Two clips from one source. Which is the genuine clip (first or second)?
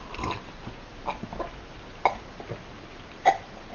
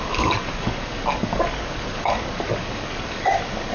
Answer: first